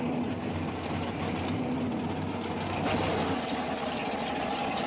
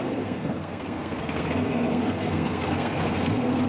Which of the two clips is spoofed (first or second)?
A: second